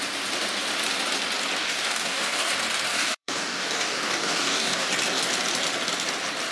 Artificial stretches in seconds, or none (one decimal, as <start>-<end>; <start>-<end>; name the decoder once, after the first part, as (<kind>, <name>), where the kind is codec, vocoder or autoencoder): 1.6-2.5 (codec, DAC); 2.9-4.9